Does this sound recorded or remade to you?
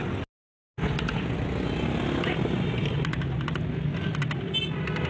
recorded